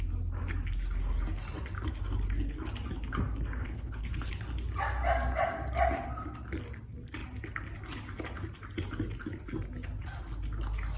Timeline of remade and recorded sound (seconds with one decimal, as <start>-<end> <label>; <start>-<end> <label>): 0.0-3.6 recorded; 3.6-4.3 remade; 4.3-11.0 recorded